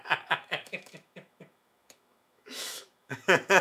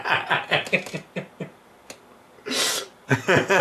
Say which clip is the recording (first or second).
second